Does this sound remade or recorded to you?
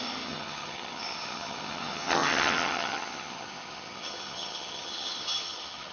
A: remade